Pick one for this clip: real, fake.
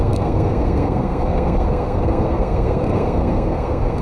fake